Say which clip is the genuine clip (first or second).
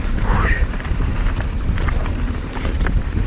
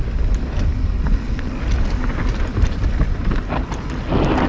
second